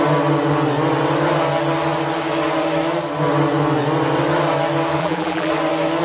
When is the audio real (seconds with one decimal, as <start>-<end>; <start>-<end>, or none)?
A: 0.0-5.0; 5.5-6.0